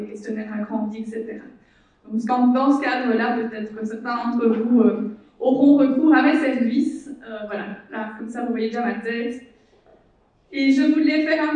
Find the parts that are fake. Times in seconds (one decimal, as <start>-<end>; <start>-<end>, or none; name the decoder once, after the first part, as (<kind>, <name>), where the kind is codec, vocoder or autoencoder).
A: 0.0-2.3 (vocoder, Vocos); 4.2-5.3